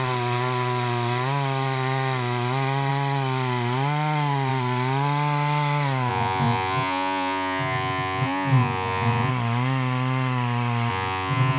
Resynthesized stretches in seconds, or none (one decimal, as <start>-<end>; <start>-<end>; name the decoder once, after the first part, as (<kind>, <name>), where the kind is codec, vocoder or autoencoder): 6.1-9.3 (vocoder, Vocos); 10.9-11.6